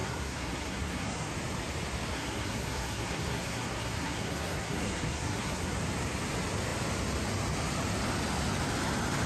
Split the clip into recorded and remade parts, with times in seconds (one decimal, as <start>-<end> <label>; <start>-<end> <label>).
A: 0.0-1.3 remade; 1.3-2.1 recorded; 2.1-5.8 remade; 5.8-9.3 recorded